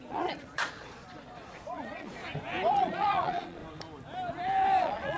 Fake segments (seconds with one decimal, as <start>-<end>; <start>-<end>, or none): 0.0-2.2; 2.7-3.6; 4.8-5.2